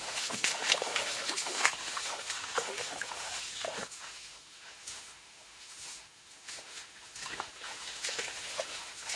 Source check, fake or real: fake